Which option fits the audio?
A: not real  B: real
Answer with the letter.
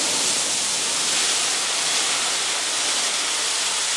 B